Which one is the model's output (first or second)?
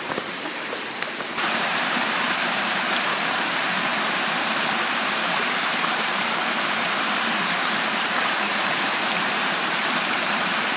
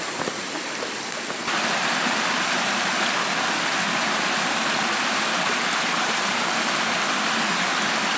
first